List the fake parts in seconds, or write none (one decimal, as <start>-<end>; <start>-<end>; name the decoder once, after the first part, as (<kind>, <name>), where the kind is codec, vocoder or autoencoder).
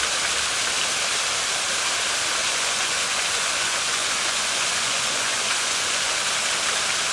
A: 2.4-6.2 (vocoder, Vocos)